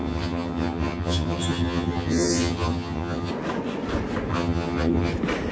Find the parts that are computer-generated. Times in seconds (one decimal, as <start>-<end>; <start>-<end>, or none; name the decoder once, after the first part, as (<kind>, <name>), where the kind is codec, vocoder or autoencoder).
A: 0.0-3.3 (vocoder, HiFi-GAN); 4.3-5.1

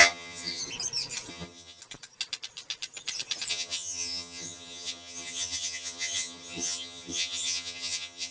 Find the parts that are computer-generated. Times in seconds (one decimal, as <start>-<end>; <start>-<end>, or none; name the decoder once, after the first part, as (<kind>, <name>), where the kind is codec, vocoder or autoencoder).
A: 0.0-0.6 (vocoder, HiFi-GAN); 1.3-1.8; 3.5-8.3

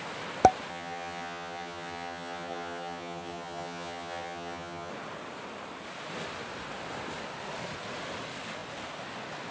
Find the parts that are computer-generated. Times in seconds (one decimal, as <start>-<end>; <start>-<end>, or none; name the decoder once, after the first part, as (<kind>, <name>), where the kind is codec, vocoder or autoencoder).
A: 0.7-4.9 (vocoder, HiFi-GAN)

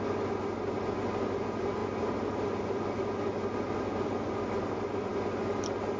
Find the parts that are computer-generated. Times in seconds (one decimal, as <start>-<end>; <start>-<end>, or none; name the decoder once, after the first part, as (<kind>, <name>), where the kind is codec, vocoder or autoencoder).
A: none

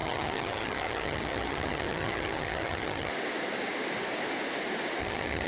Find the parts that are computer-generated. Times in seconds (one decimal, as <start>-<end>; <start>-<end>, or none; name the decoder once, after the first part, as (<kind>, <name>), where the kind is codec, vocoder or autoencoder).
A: 0.0-3.1 (vocoder, HiFi-GAN); 5.0-5.5

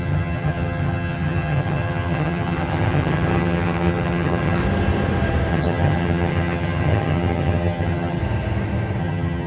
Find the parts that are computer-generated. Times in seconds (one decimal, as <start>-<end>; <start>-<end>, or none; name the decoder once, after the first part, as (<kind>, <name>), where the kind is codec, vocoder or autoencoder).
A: 0.0-4.6 (vocoder, HiFi-GAN); 5.5-8.2; 9.0-9.5